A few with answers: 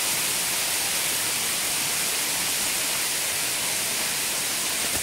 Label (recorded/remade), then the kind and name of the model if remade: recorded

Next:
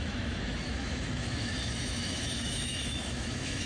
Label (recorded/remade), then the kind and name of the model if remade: remade, autoencoder, DAC-VAE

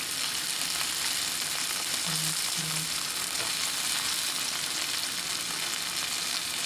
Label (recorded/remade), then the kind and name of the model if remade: recorded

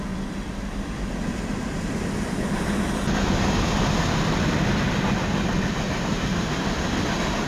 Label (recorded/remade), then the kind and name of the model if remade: recorded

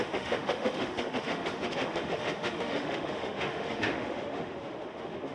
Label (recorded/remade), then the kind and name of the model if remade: remade, autoencoder, DAC-VAE